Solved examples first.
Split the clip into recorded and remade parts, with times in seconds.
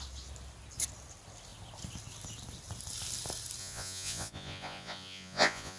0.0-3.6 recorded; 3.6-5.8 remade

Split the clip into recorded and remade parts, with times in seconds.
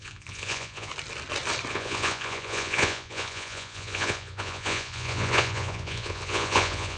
0.0-0.9 remade; 0.9-1.7 recorded; 1.7-7.0 remade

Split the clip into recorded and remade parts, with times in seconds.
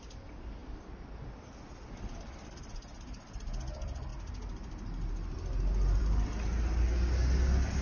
0.0-7.8 recorded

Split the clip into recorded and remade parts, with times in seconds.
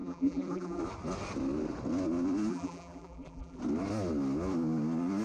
0.0-0.8 remade; 0.8-2.5 recorded; 2.5-3.6 remade; 3.6-5.2 recorded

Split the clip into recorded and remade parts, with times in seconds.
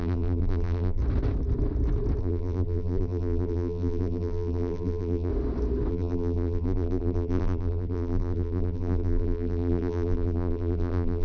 0.0-1.0 remade; 1.0-2.2 recorded; 2.2-5.3 remade; 5.3-5.9 recorded; 5.9-11.2 remade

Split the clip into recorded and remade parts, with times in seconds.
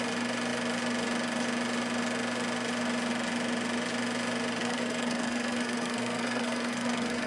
0.0-4.6 recorded; 4.6-7.3 remade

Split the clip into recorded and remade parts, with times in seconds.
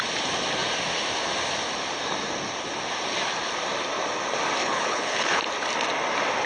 0.0-4.6 recorded; 4.6-5.4 remade; 5.4-6.5 recorded